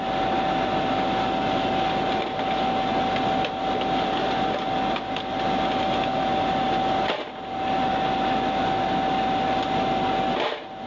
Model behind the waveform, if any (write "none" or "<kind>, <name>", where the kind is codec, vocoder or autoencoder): none